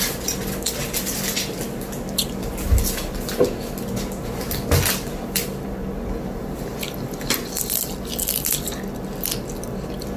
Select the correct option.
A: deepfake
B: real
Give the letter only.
B